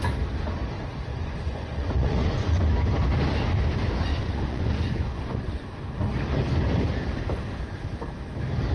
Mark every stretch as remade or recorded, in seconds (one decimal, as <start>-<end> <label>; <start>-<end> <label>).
0.0-1.1 recorded; 1.1-2.6 remade; 2.6-4.1 recorded; 4.1-5.5 remade; 5.5-8.7 recorded